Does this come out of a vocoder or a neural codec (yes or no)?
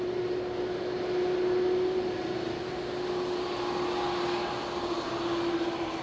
no